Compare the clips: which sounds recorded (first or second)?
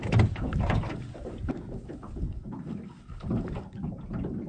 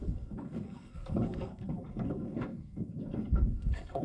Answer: first